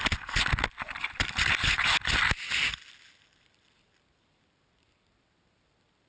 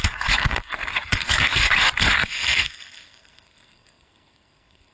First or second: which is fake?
second